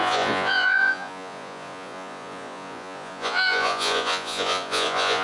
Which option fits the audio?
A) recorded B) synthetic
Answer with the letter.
B